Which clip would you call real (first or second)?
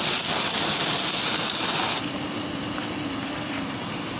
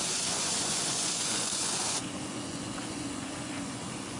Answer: first